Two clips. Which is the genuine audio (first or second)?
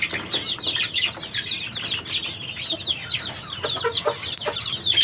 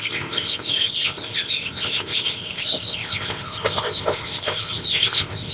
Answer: first